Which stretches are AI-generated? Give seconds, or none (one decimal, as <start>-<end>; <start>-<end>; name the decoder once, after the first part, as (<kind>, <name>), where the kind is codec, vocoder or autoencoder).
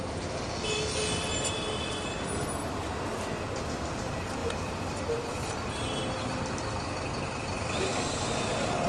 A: none